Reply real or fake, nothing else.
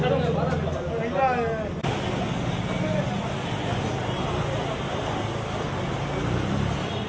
real